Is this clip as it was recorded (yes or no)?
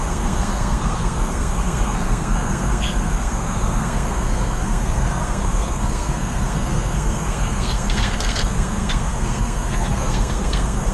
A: no